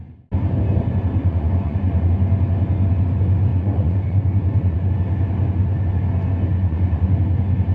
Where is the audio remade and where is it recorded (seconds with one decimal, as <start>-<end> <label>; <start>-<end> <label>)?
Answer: 0.0-1.2 recorded; 1.2-2.1 remade; 2.1-3.5 recorded; 3.5-4.9 remade; 4.9-6.6 recorded; 6.6-7.2 remade; 7.2-7.7 recorded